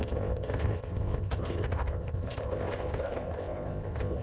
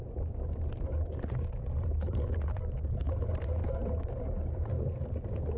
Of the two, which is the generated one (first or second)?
first